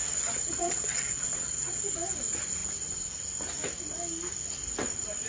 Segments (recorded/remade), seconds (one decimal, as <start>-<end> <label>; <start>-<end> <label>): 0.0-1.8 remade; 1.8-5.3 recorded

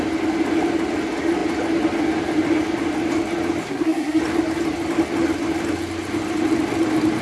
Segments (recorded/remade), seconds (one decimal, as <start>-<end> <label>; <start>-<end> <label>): 0.0-3.6 recorded; 3.6-4.2 remade; 4.2-7.2 recorded

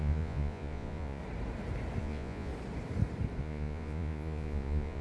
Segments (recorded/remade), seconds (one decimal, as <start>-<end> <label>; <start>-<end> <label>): 0.0-1.2 remade; 1.2-2.0 recorded; 2.0-2.5 remade; 2.5-3.4 recorded; 3.4-5.0 remade

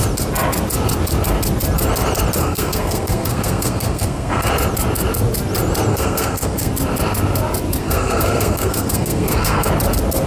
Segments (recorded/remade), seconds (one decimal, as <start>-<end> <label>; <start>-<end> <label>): 0.0-2.4 recorded; 2.4-4.5 remade; 4.5-5.9 recorded; 5.9-6.7 remade; 6.7-7.8 recorded; 7.8-9.7 remade; 9.7-10.3 recorded

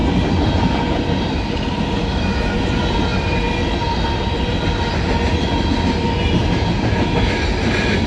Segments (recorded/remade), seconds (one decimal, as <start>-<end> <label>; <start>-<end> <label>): 0.0-8.1 recorded

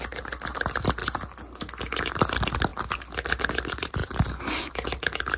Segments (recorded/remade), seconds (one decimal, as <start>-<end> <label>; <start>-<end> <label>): 0.0-5.4 recorded